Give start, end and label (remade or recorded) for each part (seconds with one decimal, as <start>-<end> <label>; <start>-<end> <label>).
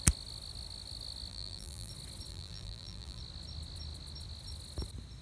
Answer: 0.0-1.3 recorded; 1.3-1.9 remade; 1.9-2.3 recorded; 2.3-3.2 remade; 3.2-5.2 recorded